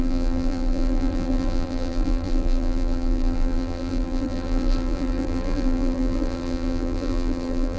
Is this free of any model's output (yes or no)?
no